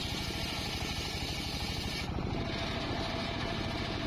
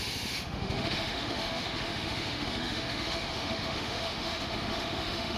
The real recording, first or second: first